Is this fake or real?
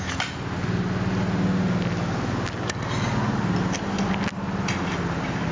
real